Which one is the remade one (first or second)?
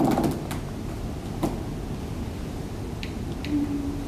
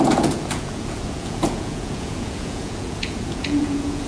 second